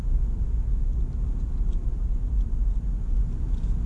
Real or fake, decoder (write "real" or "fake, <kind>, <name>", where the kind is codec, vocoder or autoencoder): real